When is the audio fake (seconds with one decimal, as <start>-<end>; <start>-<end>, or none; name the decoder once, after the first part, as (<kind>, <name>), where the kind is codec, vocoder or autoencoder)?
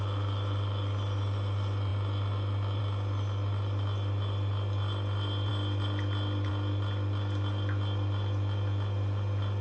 none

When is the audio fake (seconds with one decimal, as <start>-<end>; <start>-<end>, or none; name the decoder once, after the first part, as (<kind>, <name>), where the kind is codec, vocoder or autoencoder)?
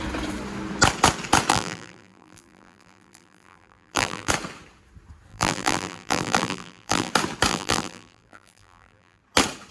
1.5-4.3 (vocoder, BigVGAN v2); 5.3-7.1; 7.5-9.2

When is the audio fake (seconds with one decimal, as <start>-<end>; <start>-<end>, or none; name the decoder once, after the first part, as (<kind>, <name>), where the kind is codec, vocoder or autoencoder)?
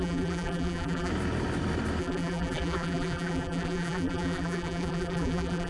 0.0-1.1 (vocoder, BigVGAN v2); 2.0-5.7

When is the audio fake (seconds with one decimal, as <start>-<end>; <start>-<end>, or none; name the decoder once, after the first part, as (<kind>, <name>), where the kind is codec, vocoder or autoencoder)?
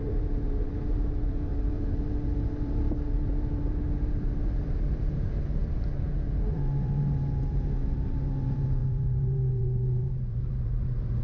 0.0-11.2 (vocoder, BigVGAN v2)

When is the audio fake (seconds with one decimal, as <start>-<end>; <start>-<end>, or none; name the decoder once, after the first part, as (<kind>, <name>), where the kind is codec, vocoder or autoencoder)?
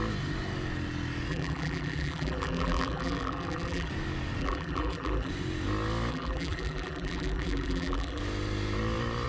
1.3-3.9 (vocoder, BigVGAN v2); 4.4-5.3; 6.1-8.2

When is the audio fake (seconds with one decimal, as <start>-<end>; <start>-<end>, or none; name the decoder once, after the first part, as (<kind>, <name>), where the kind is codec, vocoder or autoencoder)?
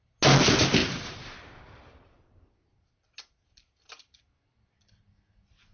0.8-4.2 (vocoder, BigVGAN v2)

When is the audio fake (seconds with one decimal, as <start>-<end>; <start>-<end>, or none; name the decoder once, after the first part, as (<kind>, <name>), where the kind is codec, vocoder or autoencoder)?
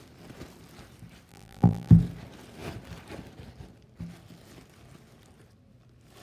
1.3-1.9 (vocoder, BigVGAN v2)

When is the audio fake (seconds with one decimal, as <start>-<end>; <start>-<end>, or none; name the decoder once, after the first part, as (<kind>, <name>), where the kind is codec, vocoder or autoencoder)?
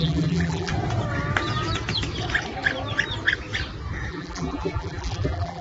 0.0-0.7 (vocoder, BigVGAN v2); 4.1-5.6